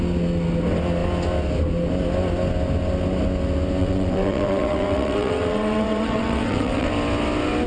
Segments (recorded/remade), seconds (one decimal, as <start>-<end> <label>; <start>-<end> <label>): 0.0-3.8 recorded; 3.8-6.9 remade; 6.9-7.7 recorded

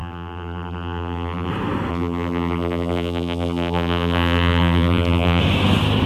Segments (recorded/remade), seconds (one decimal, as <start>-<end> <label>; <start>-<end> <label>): 0.0-1.5 remade; 1.5-1.9 recorded; 1.9-5.4 remade; 5.4-6.1 recorded

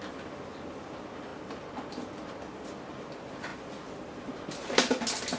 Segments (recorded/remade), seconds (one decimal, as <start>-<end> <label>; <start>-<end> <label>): 0.0-5.4 recorded

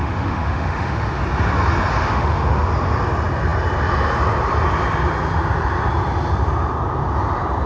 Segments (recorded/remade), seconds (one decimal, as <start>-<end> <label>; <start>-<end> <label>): 0.0-1.2 remade; 1.2-1.9 recorded; 1.9-2.7 remade; 2.7-7.7 recorded

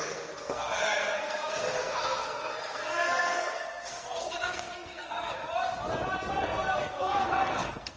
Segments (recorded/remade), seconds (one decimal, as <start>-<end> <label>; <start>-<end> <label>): 0.0-5.4 remade; 5.4-6.3 recorded; 6.3-8.0 remade

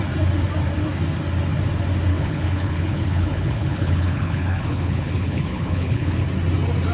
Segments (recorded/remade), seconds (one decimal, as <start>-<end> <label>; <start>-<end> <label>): 0.0-2.1 recorded; 2.1-6.2 remade; 6.2-6.9 recorded